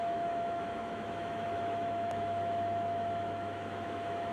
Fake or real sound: fake